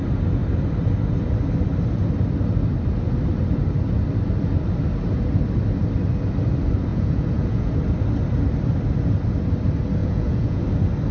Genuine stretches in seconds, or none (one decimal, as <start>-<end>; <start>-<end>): 0.0-6.9; 7.7-10.0; 10.6-11.1